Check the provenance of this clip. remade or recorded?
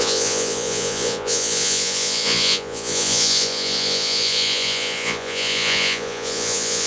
remade